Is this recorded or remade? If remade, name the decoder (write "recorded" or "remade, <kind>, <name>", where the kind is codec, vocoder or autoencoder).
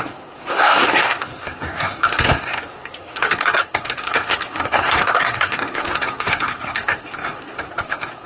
remade, codec, SNAC